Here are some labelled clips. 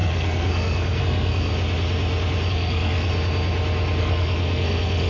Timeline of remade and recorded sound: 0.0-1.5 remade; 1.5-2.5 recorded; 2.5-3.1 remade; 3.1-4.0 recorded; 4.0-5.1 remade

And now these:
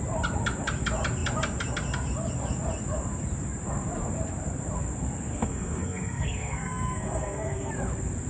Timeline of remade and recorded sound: 0.0-5.3 recorded; 5.3-7.7 remade; 7.7-8.3 recorded

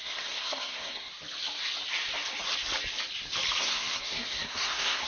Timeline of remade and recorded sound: 0.0-1.1 remade; 1.1-3.6 recorded; 3.6-5.1 remade

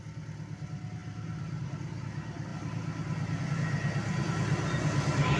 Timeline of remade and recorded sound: 0.0-5.4 recorded

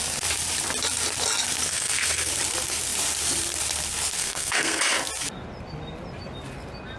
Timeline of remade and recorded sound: 0.0-1.7 recorded; 1.7-2.3 remade; 2.3-4.2 recorded; 4.2-4.8 remade; 4.8-7.0 recorded

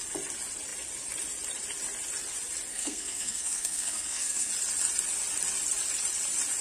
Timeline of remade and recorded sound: 0.0-2.7 recorded; 2.7-4.5 remade; 4.5-6.6 recorded

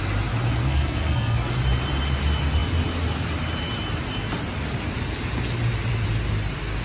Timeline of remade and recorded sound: 0.0-0.6 recorded; 0.6-1.5 remade; 1.5-6.8 recorded